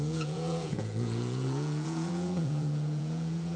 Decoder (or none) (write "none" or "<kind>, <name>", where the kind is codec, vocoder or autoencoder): vocoder, Vocos